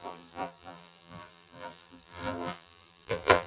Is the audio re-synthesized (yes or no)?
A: yes